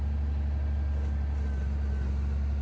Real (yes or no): yes